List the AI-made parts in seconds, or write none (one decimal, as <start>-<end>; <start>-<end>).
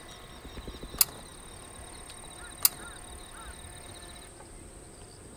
none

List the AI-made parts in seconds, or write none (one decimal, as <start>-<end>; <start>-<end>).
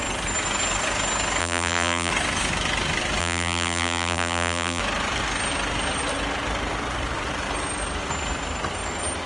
1.4-2.1; 3.2-4.8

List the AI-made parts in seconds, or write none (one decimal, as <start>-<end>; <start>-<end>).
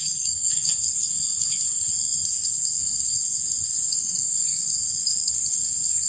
0.0-6.1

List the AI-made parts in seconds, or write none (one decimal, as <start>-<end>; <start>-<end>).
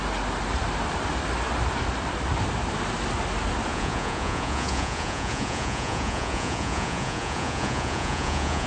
3.7-8.7